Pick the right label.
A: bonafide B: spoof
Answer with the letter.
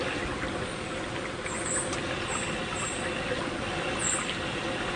A